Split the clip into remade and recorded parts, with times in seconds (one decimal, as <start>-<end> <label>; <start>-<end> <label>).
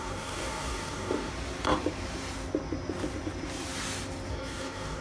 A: 0.0-1.3 remade; 1.3-4.3 recorded; 4.3-5.0 remade